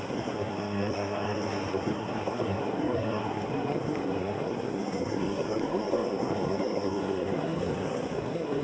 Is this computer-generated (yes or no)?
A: yes